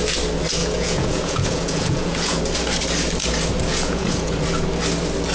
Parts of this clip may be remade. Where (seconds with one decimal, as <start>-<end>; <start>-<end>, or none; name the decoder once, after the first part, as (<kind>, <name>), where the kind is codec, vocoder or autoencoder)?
0.6-2.4 (vocoder, Vocos); 3.7-4.4